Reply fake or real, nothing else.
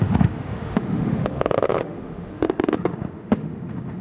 fake